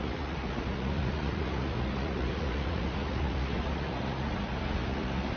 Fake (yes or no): yes